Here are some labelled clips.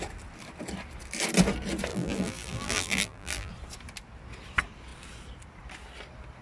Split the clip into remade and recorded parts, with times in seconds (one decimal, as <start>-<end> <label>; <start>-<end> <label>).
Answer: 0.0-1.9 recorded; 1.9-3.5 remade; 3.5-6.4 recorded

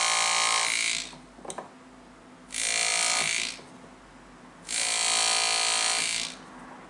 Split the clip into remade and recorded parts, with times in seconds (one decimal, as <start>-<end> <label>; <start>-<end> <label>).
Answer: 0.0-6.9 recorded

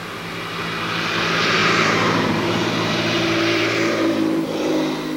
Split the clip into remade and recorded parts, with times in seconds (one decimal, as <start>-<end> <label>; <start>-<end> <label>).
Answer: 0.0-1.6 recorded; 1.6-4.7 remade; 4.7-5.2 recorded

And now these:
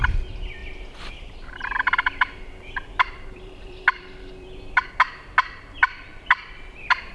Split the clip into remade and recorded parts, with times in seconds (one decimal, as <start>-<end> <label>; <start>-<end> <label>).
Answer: 0.0-0.6 recorded; 0.6-4.9 remade; 4.9-7.1 recorded

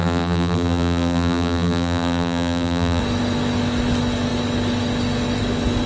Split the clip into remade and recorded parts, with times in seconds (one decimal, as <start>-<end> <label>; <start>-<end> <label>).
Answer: 0.0-3.0 remade; 3.0-5.9 recorded